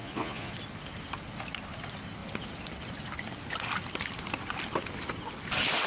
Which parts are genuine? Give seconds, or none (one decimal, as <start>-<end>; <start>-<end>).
0.5-5.9